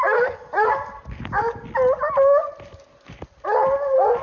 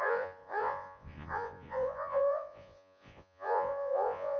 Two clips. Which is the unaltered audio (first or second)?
first